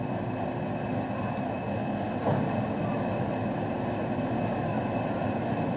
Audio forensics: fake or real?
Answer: real